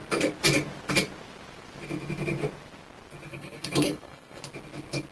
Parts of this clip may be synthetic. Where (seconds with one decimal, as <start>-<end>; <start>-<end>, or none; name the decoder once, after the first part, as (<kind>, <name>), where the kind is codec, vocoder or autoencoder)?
3.3-4.4 (codec, SNAC)